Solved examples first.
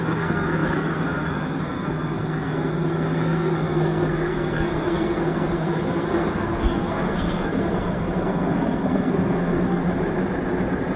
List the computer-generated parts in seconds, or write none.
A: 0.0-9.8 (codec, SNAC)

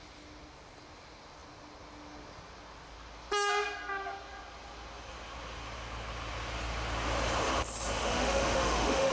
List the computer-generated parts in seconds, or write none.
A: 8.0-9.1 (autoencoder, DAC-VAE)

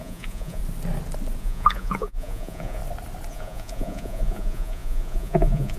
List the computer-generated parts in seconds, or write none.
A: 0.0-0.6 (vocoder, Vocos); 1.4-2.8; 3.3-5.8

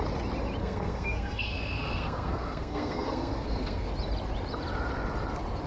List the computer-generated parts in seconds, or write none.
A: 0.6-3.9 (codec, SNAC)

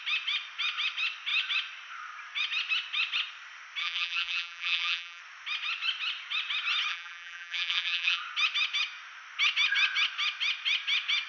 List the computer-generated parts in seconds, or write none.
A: 3.8-5.2 (vocoder, BigVGAN v2); 6.9-8.2

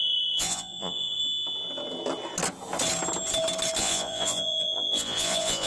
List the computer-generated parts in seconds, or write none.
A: 0.0-1.2 (vocoder, Vocos); 3.8-5.7

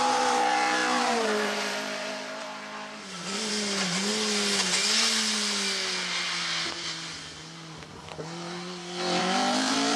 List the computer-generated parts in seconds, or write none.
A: 0.0-4.1 (vocoder, BigVGAN v2); 9.2-10.0

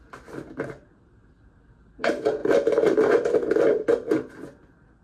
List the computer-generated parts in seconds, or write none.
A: none